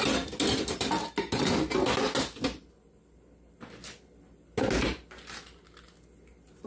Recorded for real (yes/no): yes